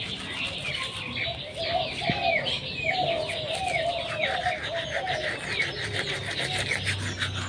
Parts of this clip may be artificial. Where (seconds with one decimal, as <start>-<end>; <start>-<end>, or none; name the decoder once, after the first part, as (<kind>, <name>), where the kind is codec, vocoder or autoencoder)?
none